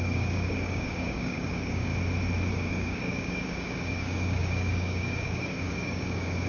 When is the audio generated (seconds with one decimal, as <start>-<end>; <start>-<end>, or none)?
0.0-1.9; 2.5-6.5